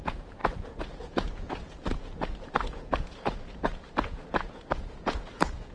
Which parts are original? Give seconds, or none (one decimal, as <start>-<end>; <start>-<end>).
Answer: none